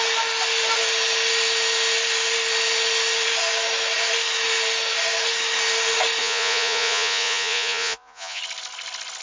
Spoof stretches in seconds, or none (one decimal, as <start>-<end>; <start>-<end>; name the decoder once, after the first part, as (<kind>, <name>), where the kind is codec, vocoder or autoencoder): 6.2-8.4 (vocoder, Vocos)